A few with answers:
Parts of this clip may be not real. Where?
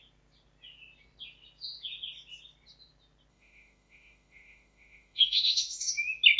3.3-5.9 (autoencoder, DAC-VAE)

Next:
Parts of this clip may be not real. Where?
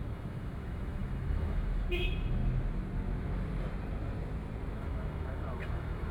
0.0-2.4 (autoencoder, DAC-VAE); 4.7-6.1